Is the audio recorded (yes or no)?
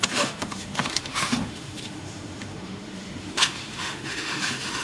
no